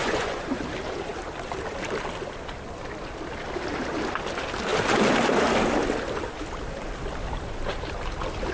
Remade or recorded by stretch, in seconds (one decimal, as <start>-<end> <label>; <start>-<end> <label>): 0.0-0.6 remade; 0.6-8.5 recorded